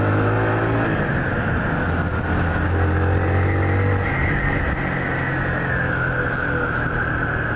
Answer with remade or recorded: recorded